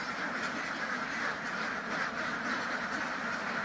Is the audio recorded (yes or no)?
no